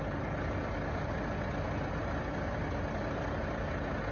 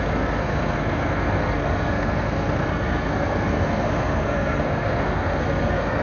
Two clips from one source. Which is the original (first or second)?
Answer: first